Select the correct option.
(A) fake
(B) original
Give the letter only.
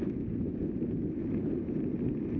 B